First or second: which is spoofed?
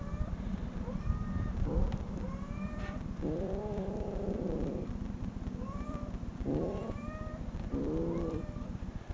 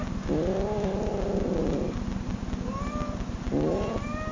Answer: first